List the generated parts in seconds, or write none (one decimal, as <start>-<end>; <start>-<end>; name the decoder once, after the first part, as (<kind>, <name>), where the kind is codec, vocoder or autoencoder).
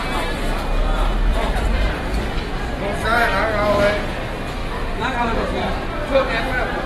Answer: 1.3-2.7 (vocoder, BigVGAN v2); 4.6-6.4